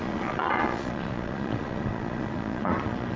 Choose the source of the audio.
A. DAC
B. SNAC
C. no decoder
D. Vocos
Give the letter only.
D